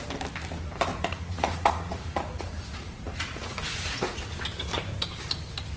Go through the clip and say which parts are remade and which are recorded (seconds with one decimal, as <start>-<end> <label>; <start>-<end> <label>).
0.0-0.9 recorded; 0.9-4.4 remade; 4.4-5.8 recorded